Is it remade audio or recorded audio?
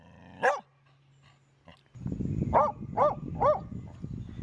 recorded